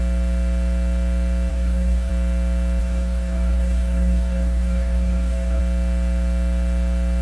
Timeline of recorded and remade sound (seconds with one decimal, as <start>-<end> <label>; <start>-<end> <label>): 0.0-1.5 recorded; 1.5-2.1 remade; 2.1-2.8 recorded; 2.8-5.6 remade; 5.6-7.2 recorded